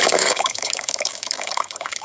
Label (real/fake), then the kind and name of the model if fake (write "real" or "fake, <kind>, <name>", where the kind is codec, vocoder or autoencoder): fake, codec, DAC